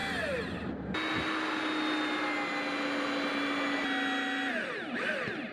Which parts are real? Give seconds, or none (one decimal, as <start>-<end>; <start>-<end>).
0.0-5.5